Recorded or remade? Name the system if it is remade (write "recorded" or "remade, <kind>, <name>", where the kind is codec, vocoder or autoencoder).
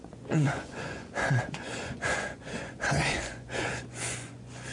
remade, vocoder, Vocos